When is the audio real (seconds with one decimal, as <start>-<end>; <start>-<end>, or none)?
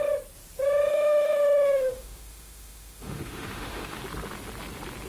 0.0-0.9; 4.0-5.1